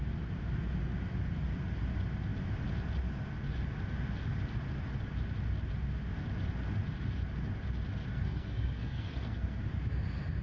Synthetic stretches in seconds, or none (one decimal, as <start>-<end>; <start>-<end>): 8.1-9.6